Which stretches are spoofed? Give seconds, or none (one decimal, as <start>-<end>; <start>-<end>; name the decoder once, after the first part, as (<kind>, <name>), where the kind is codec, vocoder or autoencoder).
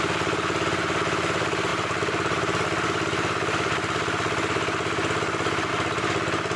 none